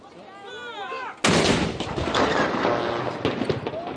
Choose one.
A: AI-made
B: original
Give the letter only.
B